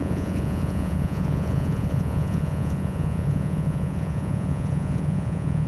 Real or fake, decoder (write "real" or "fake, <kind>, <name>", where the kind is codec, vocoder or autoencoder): fake, vocoder, Vocos